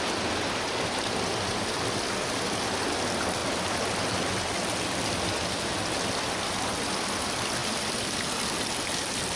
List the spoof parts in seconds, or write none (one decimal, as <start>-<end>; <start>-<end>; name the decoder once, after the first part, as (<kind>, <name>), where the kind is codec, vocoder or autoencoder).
none